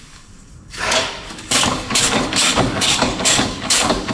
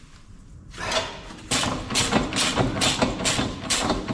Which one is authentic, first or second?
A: second